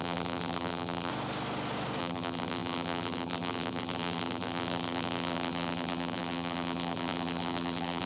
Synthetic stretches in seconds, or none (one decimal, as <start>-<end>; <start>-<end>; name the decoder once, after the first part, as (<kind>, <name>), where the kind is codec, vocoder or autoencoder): 0.0-1.1 (vocoder, BigVGAN v2); 2.0-8.1